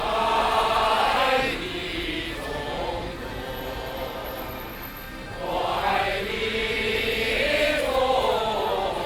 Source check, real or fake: real